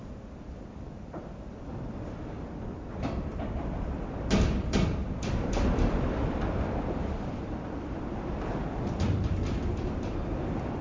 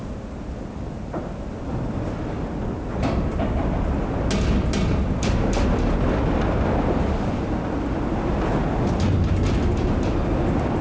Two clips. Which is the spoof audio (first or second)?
first